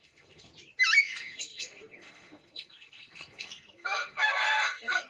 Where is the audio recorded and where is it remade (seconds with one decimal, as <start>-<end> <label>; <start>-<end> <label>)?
0.0-0.5 remade; 0.5-1.0 recorded; 1.0-5.1 remade